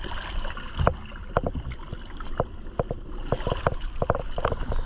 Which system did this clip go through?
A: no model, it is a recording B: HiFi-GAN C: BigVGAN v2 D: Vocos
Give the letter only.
A